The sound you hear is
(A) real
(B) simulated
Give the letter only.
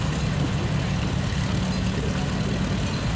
A